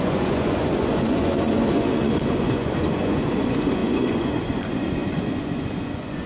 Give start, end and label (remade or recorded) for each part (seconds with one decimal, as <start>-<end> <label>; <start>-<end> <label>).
0.0-6.3 remade